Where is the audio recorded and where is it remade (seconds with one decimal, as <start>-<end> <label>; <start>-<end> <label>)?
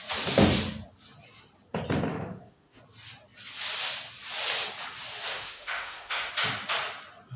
0.0-2.1 recorded; 2.1-2.8 remade; 2.8-5.3 recorded; 5.3-6.3 remade; 6.3-7.4 recorded